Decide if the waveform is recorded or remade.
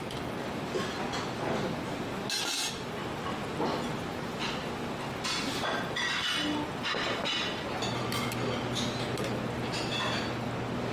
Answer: recorded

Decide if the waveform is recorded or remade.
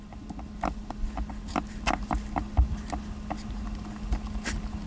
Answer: recorded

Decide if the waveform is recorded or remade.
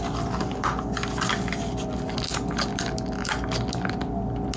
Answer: recorded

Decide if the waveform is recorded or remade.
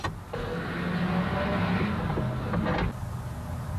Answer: recorded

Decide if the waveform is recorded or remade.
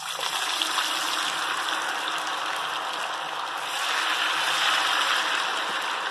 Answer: recorded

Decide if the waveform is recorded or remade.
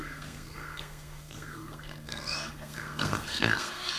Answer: remade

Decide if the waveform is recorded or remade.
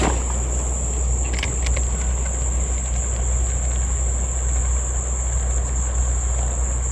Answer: recorded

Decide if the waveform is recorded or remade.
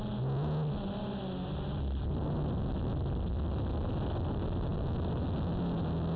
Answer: recorded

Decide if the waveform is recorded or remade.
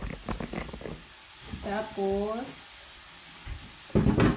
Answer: recorded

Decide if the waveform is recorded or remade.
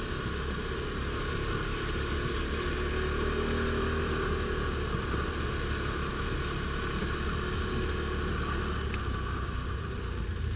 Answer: recorded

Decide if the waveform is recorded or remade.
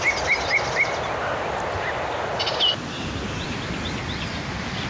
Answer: recorded